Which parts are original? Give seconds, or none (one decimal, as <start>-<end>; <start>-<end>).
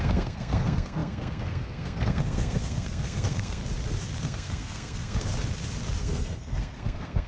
3.6-4.2; 5.3-6.0